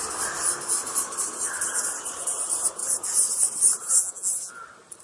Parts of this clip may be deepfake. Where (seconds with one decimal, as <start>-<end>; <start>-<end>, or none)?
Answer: 4.0-4.5